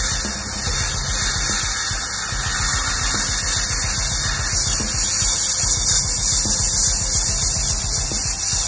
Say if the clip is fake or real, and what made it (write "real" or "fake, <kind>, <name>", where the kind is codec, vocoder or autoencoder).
real